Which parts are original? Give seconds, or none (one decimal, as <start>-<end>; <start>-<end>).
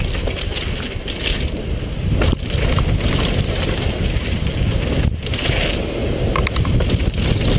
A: 0.0-7.6